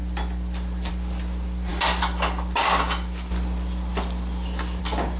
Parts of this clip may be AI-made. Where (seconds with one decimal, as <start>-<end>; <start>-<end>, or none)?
none